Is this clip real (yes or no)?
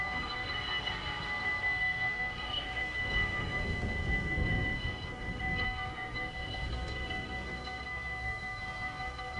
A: no